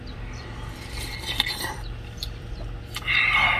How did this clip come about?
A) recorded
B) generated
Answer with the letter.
B